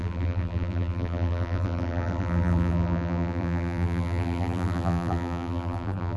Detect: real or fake fake